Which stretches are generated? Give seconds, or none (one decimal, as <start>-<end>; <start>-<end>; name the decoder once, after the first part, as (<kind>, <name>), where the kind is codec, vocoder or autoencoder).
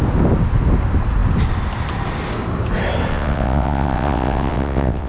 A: 3.1-5.1 (vocoder, WaveNeXt)